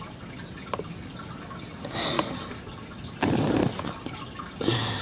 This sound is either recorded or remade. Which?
recorded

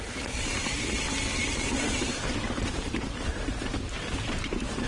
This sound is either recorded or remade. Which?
remade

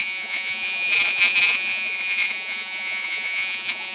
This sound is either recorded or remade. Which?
remade